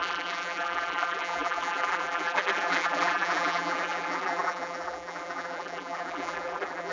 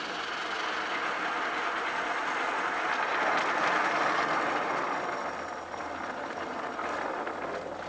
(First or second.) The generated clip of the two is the first